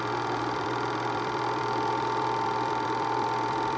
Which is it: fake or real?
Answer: fake